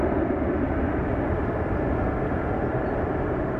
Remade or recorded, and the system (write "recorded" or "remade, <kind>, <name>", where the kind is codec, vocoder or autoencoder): recorded